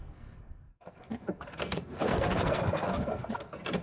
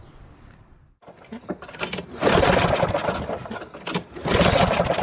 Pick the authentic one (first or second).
second